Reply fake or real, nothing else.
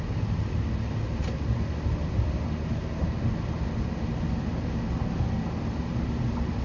real